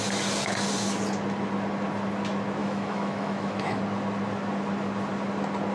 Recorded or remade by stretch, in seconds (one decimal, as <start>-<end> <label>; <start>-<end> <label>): 0.0-2.6 recorded; 2.6-3.8 remade; 3.8-5.7 recorded